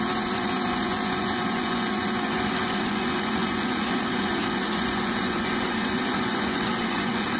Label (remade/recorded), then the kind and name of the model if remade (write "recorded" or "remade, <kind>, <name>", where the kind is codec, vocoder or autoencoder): remade, vocoder, Vocos